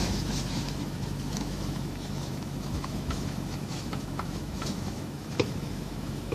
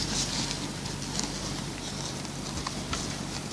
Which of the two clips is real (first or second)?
second